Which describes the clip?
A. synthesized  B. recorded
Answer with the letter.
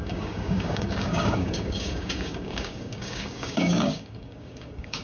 A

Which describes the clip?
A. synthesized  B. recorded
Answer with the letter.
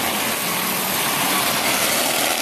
B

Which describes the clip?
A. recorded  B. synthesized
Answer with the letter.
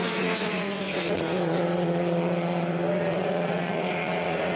B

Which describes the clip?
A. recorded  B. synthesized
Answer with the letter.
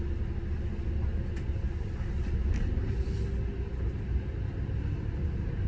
A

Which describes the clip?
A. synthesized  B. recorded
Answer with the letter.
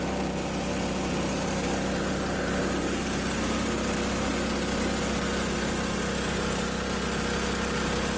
B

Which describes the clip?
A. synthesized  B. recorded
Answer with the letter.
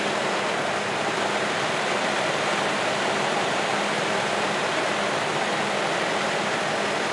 B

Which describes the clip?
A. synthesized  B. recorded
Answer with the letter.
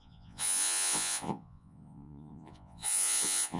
A